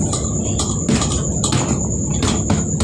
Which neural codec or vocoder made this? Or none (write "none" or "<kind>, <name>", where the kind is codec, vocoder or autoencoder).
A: none